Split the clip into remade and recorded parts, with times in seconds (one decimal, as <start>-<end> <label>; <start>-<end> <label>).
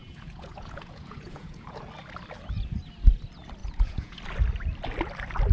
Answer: 0.0-1.8 remade; 1.8-3.6 recorded; 3.6-4.2 remade; 4.2-5.5 recorded